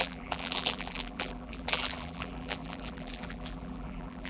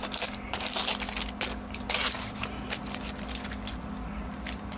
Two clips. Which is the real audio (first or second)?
second